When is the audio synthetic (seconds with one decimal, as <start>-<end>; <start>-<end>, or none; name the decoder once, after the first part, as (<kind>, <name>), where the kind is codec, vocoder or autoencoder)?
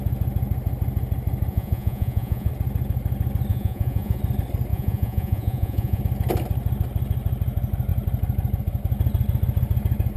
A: 1.5-2.5 (vocoder, Vocos); 3.5-4.2; 4.7-6.0